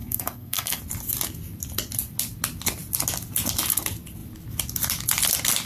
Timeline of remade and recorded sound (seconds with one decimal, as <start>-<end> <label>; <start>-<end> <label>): 0.0-0.8 remade; 0.8-5.7 recorded